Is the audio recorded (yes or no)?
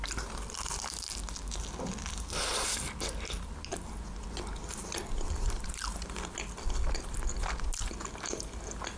yes